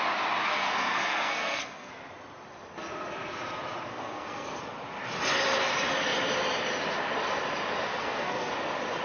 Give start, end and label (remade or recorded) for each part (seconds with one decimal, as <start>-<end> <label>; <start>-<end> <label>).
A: 0.0-0.4 recorded; 0.4-1.9 remade; 1.9-3.9 recorded; 3.9-4.6 remade; 4.6-7.9 recorded; 7.9-8.5 remade; 8.5-9.0 recorded